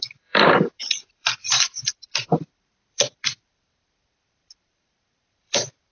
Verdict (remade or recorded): remade